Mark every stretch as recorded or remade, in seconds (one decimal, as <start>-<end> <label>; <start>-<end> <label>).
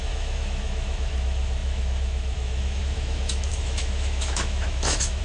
0.0-5.2 remade